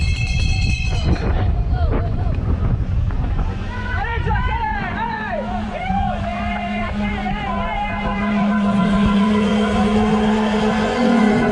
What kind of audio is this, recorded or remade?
remade